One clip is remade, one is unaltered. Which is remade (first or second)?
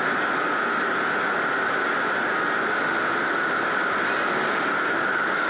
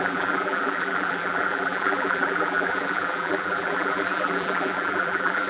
second